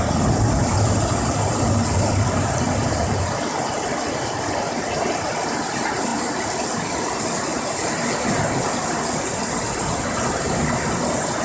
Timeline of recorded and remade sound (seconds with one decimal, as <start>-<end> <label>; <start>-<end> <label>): 0.0-11.4 recorded